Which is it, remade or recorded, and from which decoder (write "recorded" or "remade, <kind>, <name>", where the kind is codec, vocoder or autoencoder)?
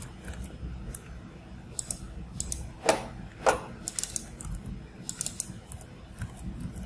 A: recorded